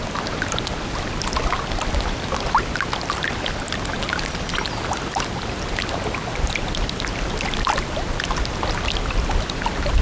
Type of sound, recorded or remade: recorded